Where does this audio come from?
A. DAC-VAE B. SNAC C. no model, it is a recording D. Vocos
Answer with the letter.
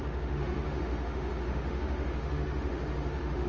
A